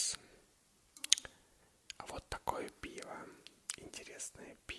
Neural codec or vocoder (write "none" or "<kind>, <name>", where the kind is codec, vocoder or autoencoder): none